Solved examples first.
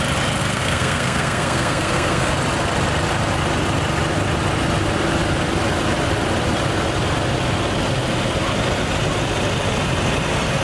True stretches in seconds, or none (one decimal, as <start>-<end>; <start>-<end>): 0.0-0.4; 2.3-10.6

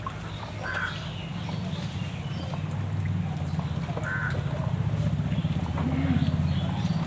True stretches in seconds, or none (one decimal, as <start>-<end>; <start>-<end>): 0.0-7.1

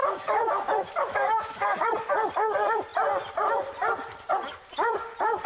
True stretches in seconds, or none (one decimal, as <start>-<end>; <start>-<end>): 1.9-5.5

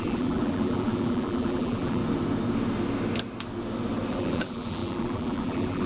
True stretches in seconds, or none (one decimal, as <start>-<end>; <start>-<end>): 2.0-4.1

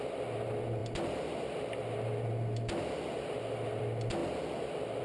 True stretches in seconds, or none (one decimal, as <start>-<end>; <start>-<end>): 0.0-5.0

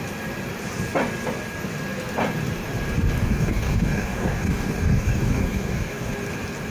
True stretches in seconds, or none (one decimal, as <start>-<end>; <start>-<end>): 0.0-3.2; 6.1-6.7

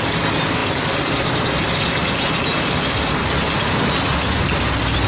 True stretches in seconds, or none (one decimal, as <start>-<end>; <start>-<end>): 0.0-5.1

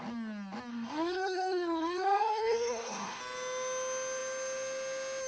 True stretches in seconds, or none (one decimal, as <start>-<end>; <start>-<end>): 0.0-0.7; 3.2-5.3